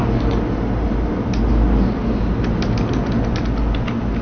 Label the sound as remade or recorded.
recorded